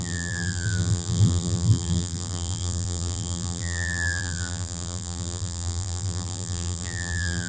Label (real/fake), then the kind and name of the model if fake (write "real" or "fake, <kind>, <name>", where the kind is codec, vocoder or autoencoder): fake, vocoder, BigVGAN v2